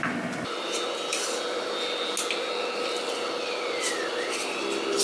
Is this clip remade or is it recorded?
recorded